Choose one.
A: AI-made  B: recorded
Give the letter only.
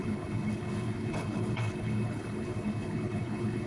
A